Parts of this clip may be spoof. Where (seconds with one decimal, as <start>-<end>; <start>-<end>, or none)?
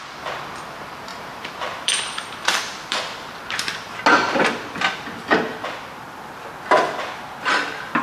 1.1-3.7